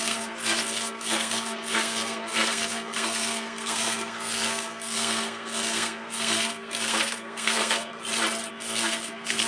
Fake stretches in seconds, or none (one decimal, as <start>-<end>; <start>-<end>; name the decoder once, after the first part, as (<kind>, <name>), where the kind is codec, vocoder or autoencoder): 0.0-7.9 (codec, SNAC); 8.5-9.5